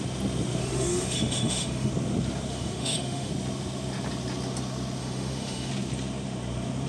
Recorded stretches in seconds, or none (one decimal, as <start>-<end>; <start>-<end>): 0.0-0.6; 1.9-2.5; 3.3-5.0; 5.7-6.9